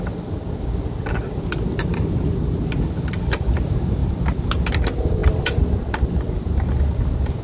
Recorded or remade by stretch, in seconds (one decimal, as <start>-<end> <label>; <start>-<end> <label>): 0.0-7.4 recorded